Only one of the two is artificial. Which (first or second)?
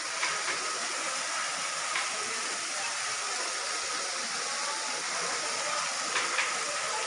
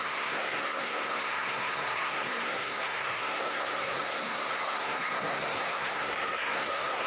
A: second